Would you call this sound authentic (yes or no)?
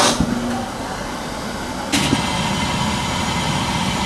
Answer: yes